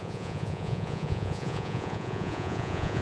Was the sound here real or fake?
fake